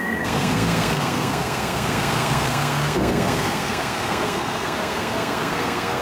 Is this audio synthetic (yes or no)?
yes